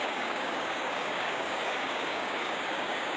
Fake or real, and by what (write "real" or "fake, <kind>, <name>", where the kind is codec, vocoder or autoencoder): fake, codec, DAC